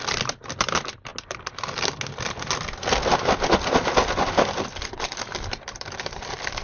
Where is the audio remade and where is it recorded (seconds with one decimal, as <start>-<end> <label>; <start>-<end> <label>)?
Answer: 0.0-1.1 remade; 1.1-4.8 recorded; 4.8-6.6 remade